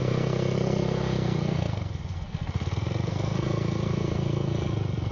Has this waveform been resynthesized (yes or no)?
yes